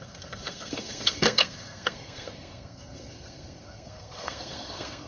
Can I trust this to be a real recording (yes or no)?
no